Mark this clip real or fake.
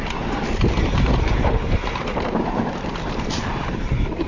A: fake